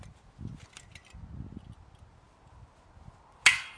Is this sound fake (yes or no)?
no